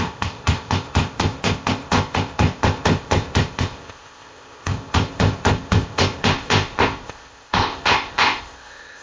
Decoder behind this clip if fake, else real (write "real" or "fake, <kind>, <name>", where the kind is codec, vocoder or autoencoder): fake, codec, ZipCodec